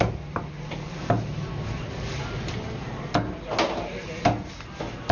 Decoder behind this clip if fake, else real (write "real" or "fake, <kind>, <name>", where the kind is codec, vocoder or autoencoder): real